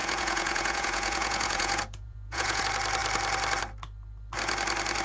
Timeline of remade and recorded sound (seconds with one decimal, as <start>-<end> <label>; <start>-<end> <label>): 0.0-2.6 remade; 2.6-5.0 recorded